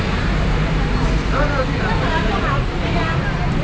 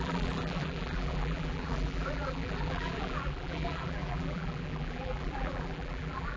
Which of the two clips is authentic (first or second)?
first